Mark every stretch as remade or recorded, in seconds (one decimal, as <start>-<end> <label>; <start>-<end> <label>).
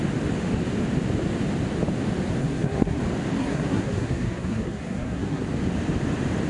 0.0-2.4 recorded; 2.4-3.0 remade; 3.0-3.4 recorded; 3.4-5.4 remade; 5.4-6.5 recorded